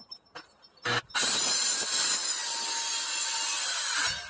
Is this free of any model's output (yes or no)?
yes